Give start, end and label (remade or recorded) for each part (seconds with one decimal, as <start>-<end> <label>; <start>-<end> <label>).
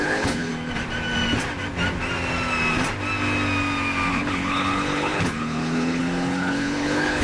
0.0-0.5 remade; 0.5-4.1 recorded; 4.1-7.2 remade